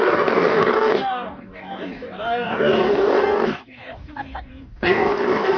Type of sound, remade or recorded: remade